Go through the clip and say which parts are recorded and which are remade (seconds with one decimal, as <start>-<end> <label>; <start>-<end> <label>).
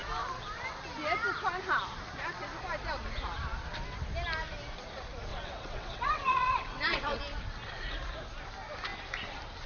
0.0-5.3 recorded; 5.3-7.2 remade; 7.2-9.7 recorded